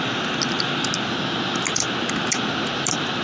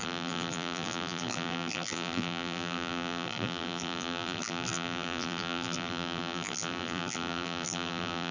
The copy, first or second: second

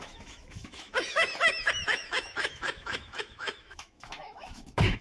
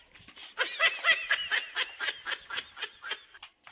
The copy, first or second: first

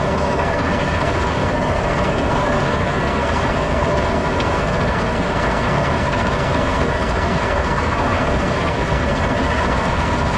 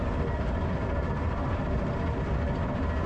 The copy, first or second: first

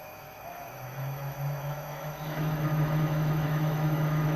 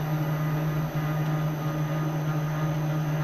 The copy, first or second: first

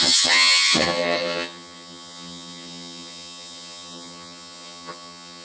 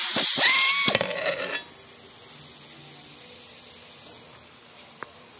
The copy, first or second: first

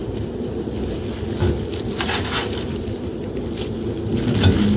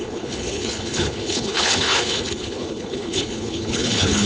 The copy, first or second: second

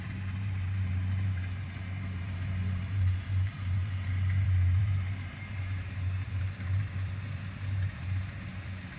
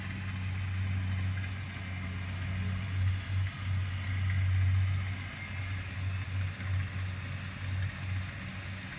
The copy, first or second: first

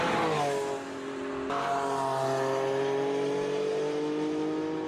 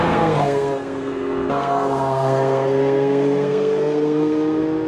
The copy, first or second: second